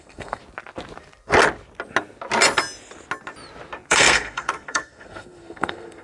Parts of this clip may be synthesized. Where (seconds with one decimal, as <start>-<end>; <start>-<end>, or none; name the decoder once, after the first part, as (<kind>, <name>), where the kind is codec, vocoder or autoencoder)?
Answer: 0.0-0.4 (codec, SNAC); 3.9-6.0